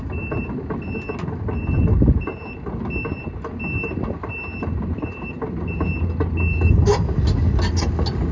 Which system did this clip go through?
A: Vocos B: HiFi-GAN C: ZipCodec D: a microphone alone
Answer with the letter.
D